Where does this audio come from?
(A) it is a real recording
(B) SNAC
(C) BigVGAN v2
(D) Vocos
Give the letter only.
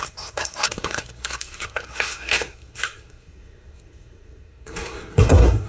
B